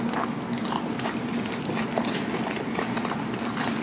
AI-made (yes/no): no